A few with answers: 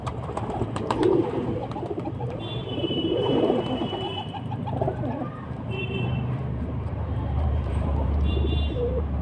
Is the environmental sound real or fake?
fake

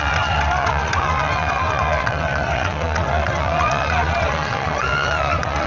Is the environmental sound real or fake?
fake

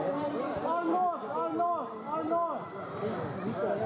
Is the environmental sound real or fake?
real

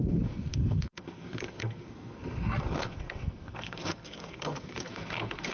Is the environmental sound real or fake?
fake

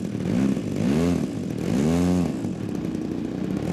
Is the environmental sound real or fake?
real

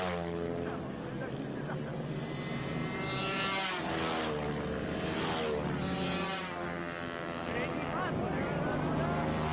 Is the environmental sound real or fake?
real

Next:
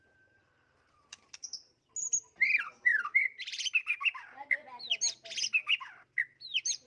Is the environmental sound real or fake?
real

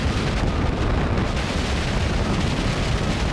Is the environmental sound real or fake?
real